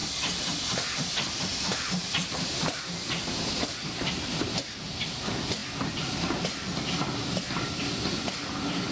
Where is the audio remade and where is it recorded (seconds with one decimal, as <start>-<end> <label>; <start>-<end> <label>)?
0.0-1.5 recorded; 1.5-4.4 remade; 4.4-8.9 recorded